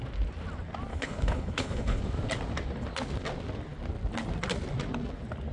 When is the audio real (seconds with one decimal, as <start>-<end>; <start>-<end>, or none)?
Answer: 0.0-0.9; 2.0-5.5